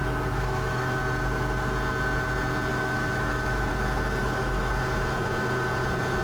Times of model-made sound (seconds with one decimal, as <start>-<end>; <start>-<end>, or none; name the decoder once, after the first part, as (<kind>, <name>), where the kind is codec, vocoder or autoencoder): 0.0-1.0 (autoencoder, DAC-VAE); 2.7-3.7; 4.2-4.7